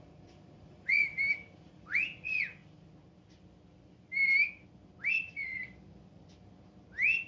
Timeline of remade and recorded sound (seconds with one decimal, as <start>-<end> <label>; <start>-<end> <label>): 0.0-1.1 remade; 1.1-1.7 recorded; 1.7-2.6 remade; 2.6-5.1 recorded; 5.1-5.6 remade; 5.6-7.3 recorded